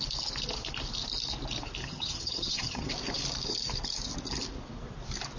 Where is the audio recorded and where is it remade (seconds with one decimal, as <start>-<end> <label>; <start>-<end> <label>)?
0.0-1.8 recorded; 1.8-2.9 remade; 2.9-5.4 recorded